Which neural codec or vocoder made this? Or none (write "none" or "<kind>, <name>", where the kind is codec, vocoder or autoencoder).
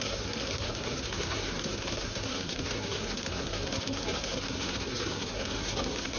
codec, SNAC